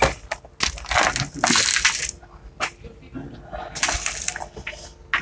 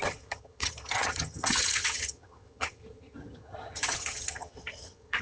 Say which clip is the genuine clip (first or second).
first